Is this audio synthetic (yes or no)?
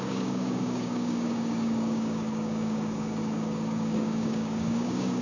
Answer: yes